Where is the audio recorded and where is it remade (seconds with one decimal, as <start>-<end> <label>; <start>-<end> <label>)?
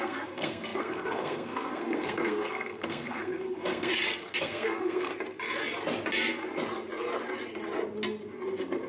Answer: 0.0-3.9 remade; 3.9-4.4 recorded; 4.4-5.1 remade; 5.1-8.9 recorded